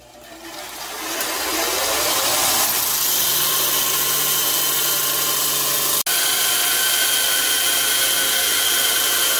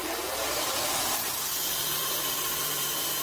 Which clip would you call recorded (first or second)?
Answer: first